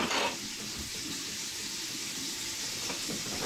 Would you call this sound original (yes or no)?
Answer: yes